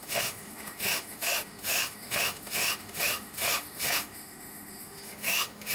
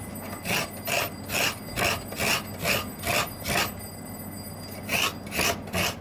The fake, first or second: first